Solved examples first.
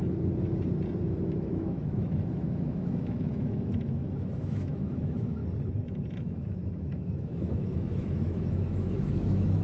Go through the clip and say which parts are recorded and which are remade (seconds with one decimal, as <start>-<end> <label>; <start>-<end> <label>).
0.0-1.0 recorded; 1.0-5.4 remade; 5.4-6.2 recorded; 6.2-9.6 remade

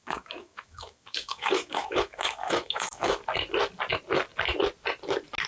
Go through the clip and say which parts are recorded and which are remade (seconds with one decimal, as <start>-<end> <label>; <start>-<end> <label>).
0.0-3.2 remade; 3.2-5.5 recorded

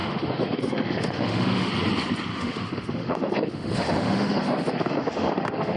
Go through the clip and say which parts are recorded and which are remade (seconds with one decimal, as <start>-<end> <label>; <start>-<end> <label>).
0.0-1.7 remade; 1.7-2.3 recorded; 2.3-5.8 remade